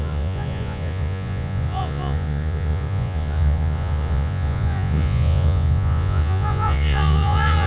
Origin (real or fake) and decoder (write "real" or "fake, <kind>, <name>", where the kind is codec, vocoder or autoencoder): fake, vocoder, Vocos